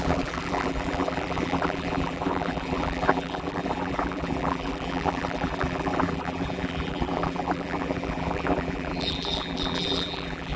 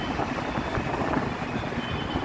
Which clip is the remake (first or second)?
first